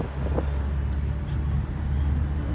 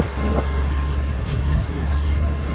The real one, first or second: first